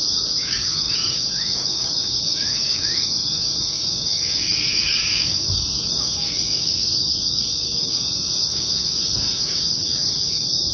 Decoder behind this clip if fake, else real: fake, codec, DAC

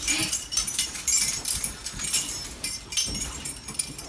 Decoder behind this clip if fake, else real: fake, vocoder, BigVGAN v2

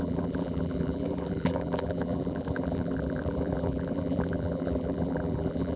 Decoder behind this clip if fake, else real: fake, vocoder, BigVGAN v2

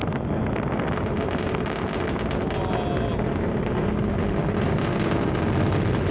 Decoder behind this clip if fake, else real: real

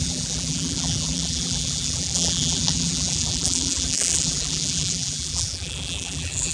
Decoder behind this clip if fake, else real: fake, vocoder, BigVGAN v2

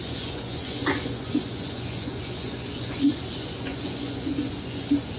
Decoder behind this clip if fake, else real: fake, vocoder, Vocos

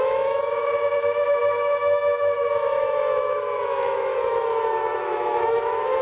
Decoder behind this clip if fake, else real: fake, autoencoder, DAC-VAE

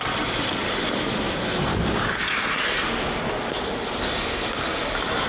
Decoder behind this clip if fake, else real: real